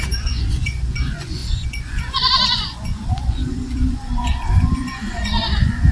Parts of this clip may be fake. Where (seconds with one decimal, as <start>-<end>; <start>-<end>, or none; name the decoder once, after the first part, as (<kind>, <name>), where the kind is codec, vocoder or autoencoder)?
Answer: 0.0-5.9 (vocoder, Vocos)